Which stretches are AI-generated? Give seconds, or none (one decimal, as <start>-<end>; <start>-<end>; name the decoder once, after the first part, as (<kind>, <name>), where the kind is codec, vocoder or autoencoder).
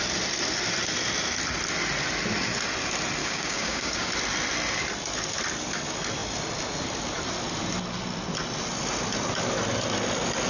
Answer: 3.2-4.1 (codec, DAC)